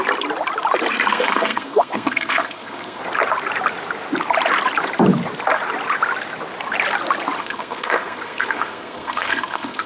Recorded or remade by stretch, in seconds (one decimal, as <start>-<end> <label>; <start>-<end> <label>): 0.0-1.1 recorded; 1.1-3.0 remade; 3.0-7.4 recorded; 7.4-9.9 remade